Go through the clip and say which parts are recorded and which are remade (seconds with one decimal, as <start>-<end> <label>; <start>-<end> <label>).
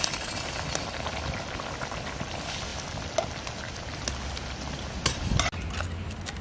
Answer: 0.0-6.4 recorded